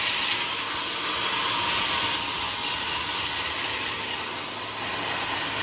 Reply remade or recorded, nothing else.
recorded